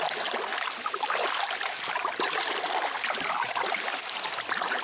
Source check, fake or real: real